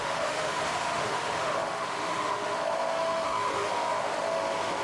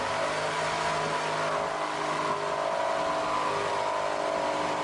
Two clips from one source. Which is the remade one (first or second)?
first